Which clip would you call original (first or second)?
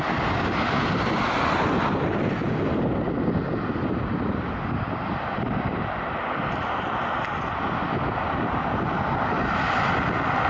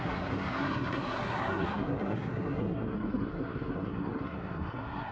first